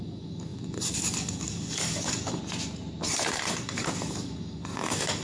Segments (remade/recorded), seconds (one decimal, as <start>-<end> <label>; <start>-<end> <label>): 0.0-2.4 remade; 2.4-3.3 recorded; 3.3-5.2 remade

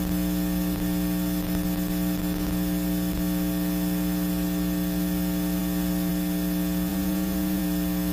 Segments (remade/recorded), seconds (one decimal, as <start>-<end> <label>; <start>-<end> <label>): 0.0-6.9 recorded; 6.9-7.6 remade; 7.6-8.1 recorded

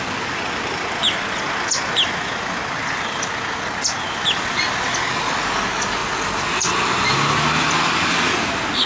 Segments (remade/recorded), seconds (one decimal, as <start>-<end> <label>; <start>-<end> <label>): 0.0-8.9 recorded

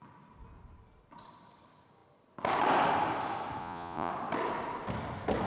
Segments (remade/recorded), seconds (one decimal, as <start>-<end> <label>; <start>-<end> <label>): 0.0-3.6 recorded; 3.6-4.1 remade; 4.1-5.5 recorded

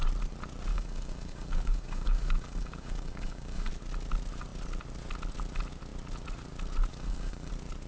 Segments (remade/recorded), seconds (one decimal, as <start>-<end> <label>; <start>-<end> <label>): 0.0-0.7 recorded; 0.7-3.7 remade; 3.7-6.9 recorded; 6.9-7.5 remade; 7.5-7.9 recorded